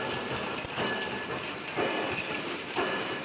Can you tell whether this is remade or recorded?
remade